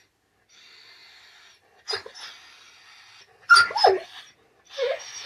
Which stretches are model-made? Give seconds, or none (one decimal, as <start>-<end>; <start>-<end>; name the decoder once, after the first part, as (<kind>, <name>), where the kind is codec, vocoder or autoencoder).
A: 1.0-4.2 (vocoder, BigVGAN v2)